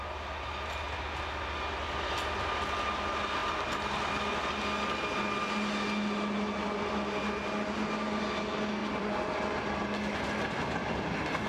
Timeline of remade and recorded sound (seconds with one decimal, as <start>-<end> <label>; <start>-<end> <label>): 0.0-8.8 recorded; 8.8-9.8 remade; 9.8-11.5 recorded